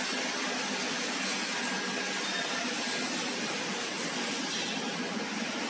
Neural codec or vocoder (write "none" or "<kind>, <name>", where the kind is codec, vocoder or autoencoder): none